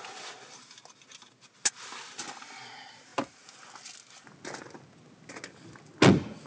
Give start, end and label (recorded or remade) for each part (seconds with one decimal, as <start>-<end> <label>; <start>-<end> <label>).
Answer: 0.0-6.5 recorded